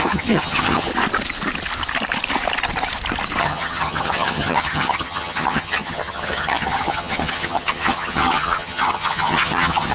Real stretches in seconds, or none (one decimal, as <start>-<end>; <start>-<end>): 0.9-3.4